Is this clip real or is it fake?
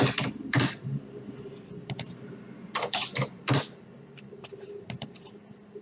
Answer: fake